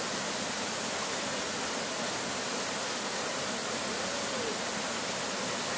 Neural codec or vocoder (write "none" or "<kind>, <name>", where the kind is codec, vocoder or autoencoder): none